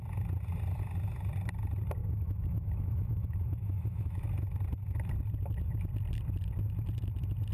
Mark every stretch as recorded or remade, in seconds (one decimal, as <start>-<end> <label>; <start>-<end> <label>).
0.0-2.0 recorded; 2.0-4.3 remade; 4.3-7.5 recorded

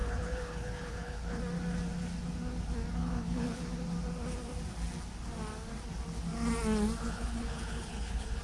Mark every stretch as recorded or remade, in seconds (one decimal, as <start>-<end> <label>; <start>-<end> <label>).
0.0-1.4 remade; 1.4-3.0 recorded; 3.0-3.7 remade; 3.7-7.0 recorded; 7.0-8.4 remade